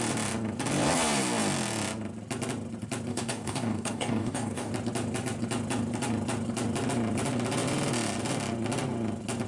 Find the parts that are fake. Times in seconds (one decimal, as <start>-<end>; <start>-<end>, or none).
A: 3.1-4.7